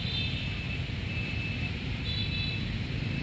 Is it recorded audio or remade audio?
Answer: recorded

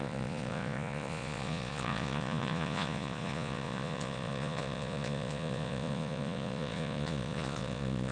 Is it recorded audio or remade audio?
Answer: remade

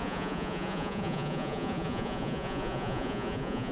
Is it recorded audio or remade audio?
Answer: remade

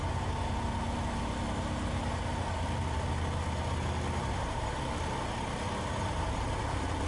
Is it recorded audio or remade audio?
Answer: recorded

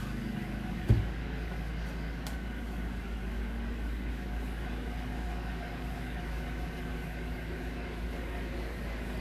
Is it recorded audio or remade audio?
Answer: remade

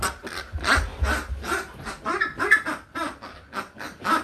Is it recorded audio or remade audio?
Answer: recorded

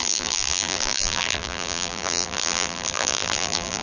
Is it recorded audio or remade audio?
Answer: remade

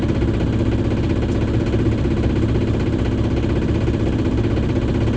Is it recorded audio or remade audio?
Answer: recorded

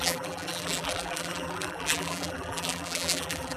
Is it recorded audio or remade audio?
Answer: remade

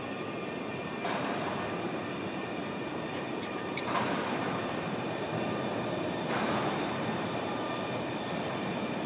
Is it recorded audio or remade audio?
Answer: remade